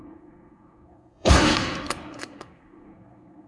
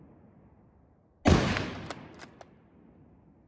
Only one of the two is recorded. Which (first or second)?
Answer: second